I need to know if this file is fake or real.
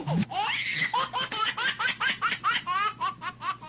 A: real